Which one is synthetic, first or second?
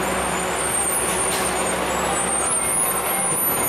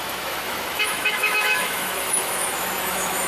second